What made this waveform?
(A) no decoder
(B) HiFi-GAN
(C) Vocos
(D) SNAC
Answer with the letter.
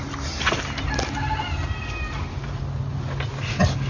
A